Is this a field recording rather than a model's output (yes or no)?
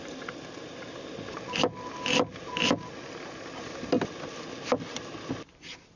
yes